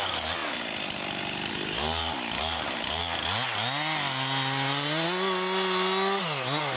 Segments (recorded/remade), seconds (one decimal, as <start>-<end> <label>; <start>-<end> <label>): 0.0-3.0 remade; 3.0-6.2 recorded; 6.2-6.8 remade